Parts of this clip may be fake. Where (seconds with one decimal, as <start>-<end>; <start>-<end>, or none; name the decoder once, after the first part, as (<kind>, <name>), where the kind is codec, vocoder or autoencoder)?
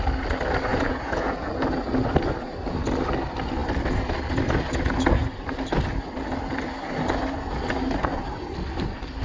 0.7-1.5 (vocoder, Vocos)